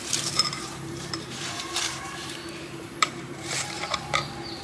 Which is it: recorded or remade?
remade